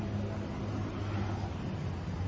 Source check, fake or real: real